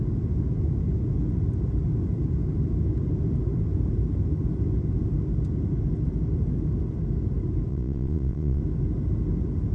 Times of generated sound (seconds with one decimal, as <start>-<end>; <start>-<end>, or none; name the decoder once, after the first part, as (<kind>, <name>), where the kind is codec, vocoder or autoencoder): 7.7-8.6 (vocoder, Vocos)